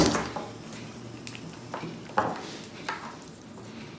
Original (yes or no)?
yes